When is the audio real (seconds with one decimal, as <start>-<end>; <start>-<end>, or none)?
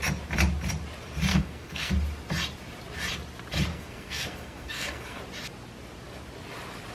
0.0-1.3; 1.9-3.7; 5.2-6.9